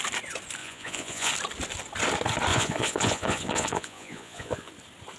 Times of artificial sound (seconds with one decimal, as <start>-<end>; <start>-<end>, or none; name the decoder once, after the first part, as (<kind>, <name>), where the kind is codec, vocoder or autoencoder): 0.6-1.3 (vocoder, Vocos); 2.5-4.7